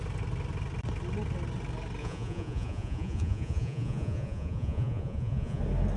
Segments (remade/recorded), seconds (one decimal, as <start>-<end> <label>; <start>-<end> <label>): 0.0-2.0 recorded; 2.0-5.6 remade; 5.6-6.0 recorded